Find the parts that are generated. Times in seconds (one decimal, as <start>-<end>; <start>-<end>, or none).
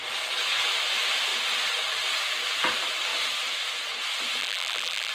4.4-5.1